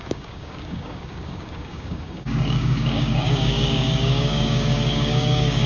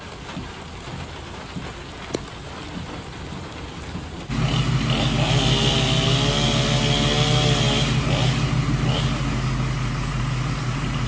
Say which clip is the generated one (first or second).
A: first